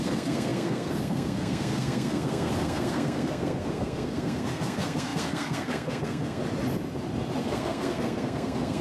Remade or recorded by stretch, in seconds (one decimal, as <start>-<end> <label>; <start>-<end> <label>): 0.0-6.4 remade; 6.4-7.4 recorded; 7.4-8.8 remade